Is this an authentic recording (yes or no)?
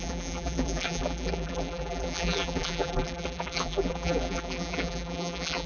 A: no